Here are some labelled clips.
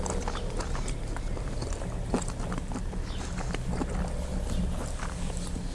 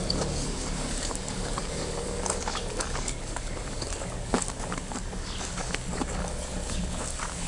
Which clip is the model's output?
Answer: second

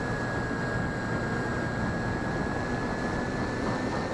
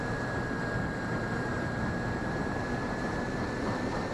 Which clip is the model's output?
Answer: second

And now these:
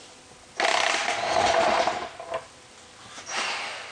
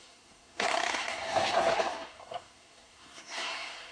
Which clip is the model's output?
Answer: second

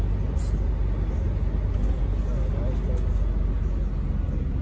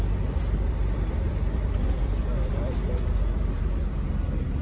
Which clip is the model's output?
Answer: second